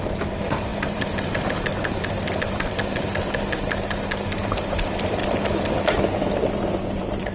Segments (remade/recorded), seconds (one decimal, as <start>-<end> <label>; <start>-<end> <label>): 0.0-2.8 remade; 2.8-4.4 recorded; 4.4-5.2 remade; 5.2-6.7 recorded; 6.7-7.3 remade